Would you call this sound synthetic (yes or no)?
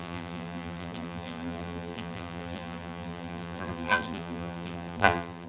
yes